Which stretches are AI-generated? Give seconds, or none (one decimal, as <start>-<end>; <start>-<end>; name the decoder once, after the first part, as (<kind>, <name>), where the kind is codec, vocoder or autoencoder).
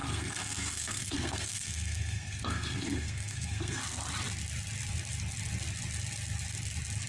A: 0.0-3.8 (codec, SNAC)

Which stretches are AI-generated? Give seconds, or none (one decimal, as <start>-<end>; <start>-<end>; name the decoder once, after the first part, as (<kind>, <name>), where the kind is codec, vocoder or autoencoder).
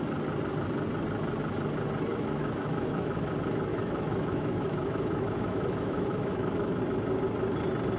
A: 2.1-3.3 (autoencoder, DAC-VAE); 3.7-6.8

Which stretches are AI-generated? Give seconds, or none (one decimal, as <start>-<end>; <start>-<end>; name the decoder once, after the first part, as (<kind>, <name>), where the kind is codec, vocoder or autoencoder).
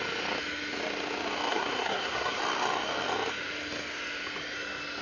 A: 1.5-2.4 (codec, SNAC)